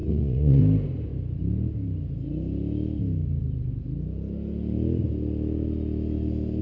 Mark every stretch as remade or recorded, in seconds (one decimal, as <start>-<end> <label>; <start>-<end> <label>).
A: 0.0-0.6 remade; 0.6-6.6 recorded